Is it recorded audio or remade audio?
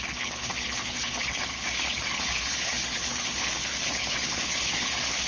remade